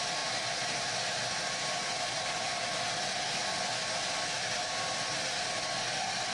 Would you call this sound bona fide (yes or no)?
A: yes